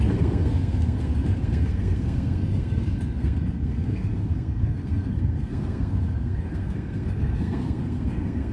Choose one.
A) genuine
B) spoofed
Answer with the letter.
B